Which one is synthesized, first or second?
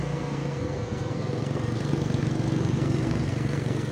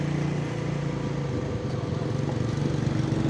first